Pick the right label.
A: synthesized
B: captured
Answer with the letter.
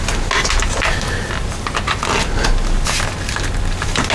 B